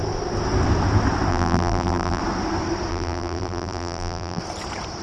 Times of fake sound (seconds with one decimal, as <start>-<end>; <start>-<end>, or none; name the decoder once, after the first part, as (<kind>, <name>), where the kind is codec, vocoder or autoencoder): 1.3-2.2 (vocoder, BigVGAN v2); 2.9-4.4